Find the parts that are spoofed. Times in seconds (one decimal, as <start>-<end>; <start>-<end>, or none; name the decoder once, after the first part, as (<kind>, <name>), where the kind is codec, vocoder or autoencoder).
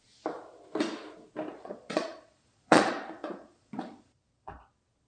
1.5-4.6 (vocoder, Vocos)